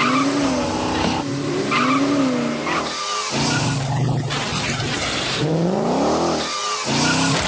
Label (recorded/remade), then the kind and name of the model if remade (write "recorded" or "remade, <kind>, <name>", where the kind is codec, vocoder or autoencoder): recorded